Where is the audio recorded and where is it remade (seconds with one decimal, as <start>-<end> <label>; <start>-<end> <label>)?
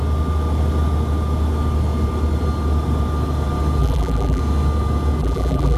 0.0-3.8 recorded; 3.8-4.4 remade; 4.4-5.2 recorded; 5.2-5.8 remade